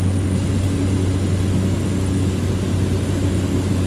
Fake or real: real